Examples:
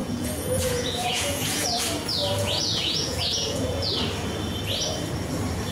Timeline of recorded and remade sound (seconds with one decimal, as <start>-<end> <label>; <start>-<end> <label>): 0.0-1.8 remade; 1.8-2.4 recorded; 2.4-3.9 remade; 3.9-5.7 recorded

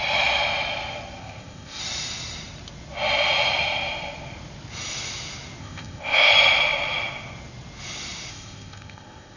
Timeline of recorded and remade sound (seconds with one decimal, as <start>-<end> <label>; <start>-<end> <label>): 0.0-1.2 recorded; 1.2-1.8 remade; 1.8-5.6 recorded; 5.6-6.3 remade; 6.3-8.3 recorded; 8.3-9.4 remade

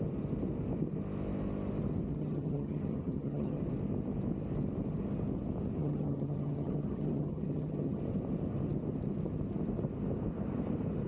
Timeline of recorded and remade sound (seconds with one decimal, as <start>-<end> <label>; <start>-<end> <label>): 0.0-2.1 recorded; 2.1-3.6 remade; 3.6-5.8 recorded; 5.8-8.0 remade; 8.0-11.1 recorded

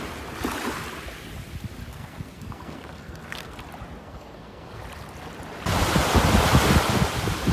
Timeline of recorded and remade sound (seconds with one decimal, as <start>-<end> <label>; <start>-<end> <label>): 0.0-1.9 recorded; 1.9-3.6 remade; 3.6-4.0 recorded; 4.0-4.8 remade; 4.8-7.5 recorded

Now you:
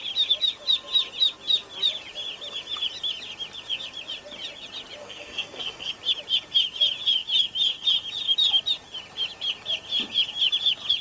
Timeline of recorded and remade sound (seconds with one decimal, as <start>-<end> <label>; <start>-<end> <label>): 0.0-5.0 recorded; 5.0-5.9 remade; 5.9-11.0 recorded